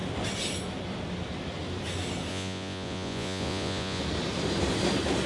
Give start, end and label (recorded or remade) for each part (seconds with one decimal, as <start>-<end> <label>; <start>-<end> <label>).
0.0-2.3 recorded; 2.3-4.0 remade; 4.0-5.3 recorded